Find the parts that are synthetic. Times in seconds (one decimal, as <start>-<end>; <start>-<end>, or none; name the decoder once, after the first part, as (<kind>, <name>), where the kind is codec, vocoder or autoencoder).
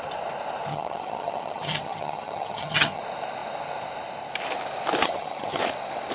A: 0.7-3.0 (vocoder, HiFi-GAN); 5.0-5.6